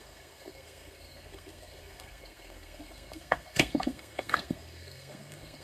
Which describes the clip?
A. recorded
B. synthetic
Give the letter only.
B